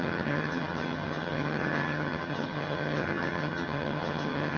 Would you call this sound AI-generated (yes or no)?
yes